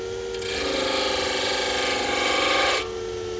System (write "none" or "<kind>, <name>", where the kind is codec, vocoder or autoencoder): none